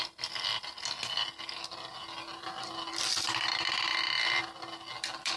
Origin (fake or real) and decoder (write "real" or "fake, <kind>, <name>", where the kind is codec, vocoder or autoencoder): real